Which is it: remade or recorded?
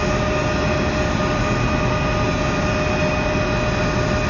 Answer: recorded